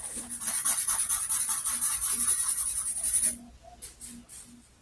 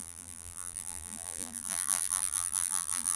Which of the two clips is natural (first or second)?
first